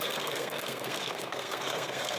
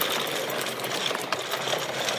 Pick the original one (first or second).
second